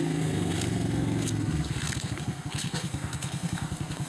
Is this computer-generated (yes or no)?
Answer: yes